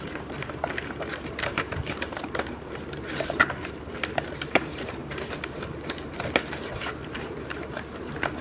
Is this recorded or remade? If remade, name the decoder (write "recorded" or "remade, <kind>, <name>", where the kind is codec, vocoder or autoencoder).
remade, vocoder, BigVGAN v2